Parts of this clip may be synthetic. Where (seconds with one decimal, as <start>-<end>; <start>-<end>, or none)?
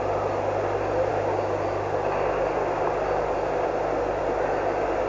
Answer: none